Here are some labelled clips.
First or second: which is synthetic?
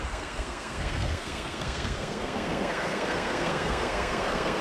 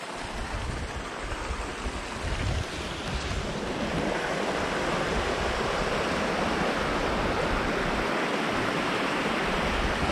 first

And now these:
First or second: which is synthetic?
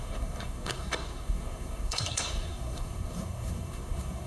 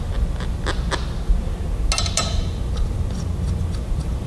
first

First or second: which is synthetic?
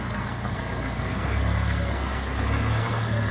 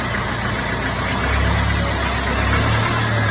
first